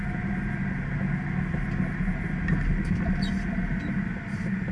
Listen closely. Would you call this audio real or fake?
real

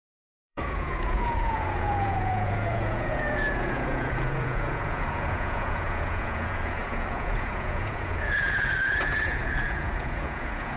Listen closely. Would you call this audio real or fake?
fake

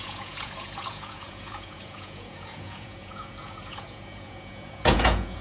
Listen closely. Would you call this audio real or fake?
fake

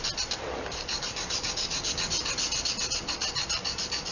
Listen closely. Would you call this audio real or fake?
real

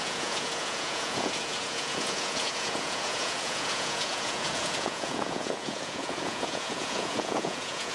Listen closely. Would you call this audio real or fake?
fake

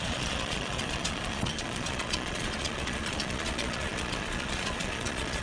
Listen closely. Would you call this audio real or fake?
fake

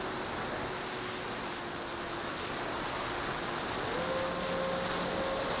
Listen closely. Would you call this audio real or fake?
real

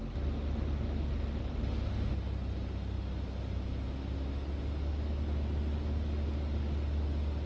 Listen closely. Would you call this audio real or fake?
real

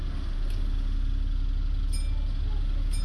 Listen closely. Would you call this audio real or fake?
real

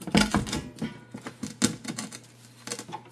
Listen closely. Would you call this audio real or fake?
real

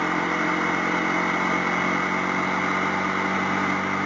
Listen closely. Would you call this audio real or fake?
real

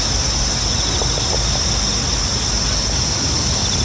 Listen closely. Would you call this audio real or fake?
real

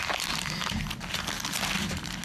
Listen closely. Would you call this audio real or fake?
real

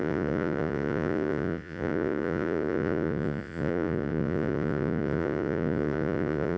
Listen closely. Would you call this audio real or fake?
fake